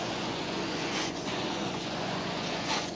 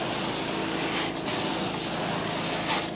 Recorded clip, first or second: second